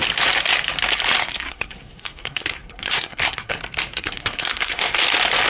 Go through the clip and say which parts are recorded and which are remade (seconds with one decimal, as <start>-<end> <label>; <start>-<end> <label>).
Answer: 0.0-1.2 recorded; 1.2-3.6 remade; 3.6-4.0 recorded; 4.0-4.9 remade; 4.9-5.5 recorded